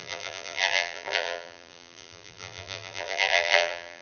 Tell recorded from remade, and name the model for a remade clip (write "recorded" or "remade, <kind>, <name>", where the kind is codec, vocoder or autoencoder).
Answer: remade, vocoder, BigVGAN v2